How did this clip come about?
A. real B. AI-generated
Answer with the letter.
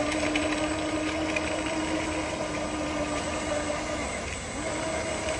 A